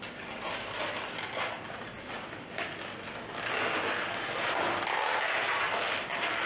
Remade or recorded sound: recorded